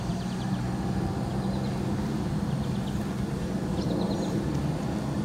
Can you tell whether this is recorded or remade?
recorded